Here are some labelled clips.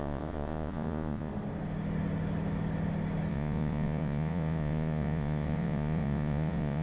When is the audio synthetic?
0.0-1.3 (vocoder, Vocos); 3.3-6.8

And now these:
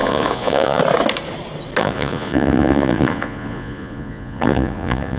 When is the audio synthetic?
0.0-0.8 (vocoder, Vocos); 1.8-5.2

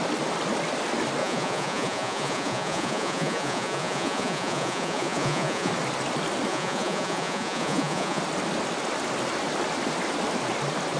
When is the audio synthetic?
1.2-5.7 (vocoder, Vocos); 6.5-8.2

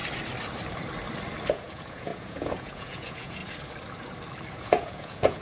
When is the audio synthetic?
1.5-3.4 (vocoder, Vocos); 4.5-5.4

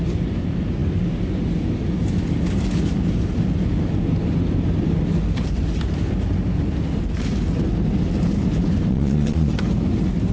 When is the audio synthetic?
8.9-9.5 (vocoder, Vocos)

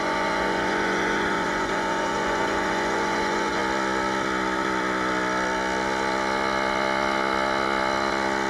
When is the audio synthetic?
0.0-3.6 (vocoder, Vocos)

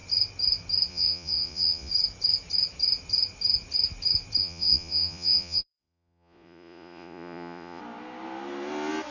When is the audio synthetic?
0.9-1.9 (vocoder, Vocos); 4.4-7.8